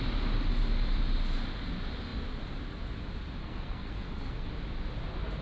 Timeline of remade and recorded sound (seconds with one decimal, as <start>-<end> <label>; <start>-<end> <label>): 0.0-3.4 recorded; 3.4-4.5 remade; 4.5-5.4 recorded